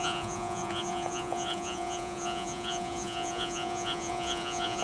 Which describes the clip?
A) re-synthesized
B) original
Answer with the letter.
A